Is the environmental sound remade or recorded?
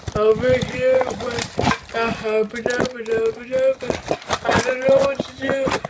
recorded